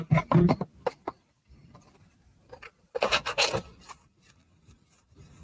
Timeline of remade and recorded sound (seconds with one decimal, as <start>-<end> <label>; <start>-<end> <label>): 0.0-5.4 recorded

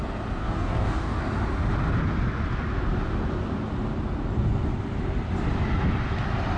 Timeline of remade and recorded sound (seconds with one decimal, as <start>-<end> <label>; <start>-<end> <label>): 0.0-0.4 recorded; 0.4-1.2 remade; 1.2-6.6 recorded

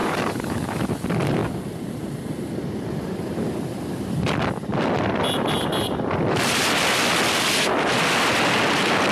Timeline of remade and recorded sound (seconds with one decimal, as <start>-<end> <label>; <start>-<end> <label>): 0.0-0.9 remade; 0.9-9.1 recorded

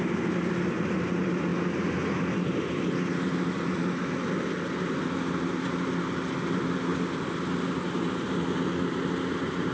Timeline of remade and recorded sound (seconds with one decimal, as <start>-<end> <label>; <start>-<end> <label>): 0.0-9.7 recorded

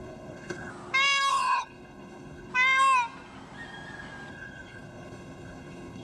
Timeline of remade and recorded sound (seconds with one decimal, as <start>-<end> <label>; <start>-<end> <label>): 0.0-0.7 remade; 0.7-1.3 recorded; 1.3-2.5 remade; 2.5-4.3 recorded; 4.3-6.0 remade

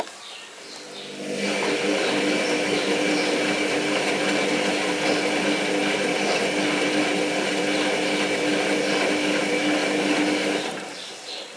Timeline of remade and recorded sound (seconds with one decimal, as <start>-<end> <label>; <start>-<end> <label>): 0.0-11.6 recorded

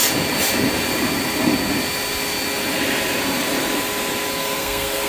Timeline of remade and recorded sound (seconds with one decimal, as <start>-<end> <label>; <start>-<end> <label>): 0.0-4.4 recorded; 4.4-5.1 remade

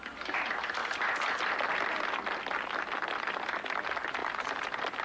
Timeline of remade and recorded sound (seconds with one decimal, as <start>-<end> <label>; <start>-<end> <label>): 0.0-5.0 recorded